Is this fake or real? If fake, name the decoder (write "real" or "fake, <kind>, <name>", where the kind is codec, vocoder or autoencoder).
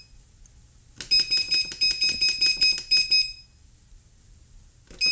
real